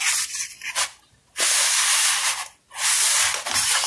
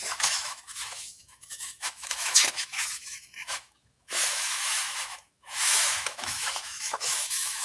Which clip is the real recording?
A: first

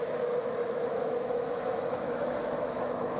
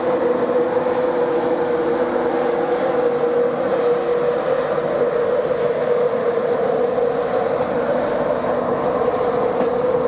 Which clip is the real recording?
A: second